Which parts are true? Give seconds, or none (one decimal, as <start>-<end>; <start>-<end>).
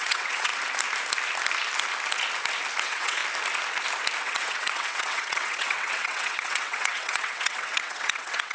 0.5-2.8; 3.2-4.2